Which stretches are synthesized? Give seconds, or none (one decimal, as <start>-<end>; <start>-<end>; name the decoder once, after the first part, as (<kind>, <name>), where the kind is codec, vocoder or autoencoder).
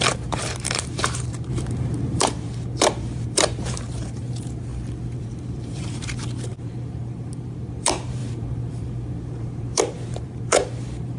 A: 0.0-4.7 (vocoder, BigVGAN v2); 5.2-11.2